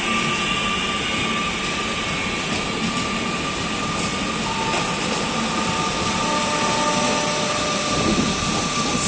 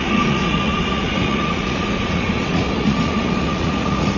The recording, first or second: first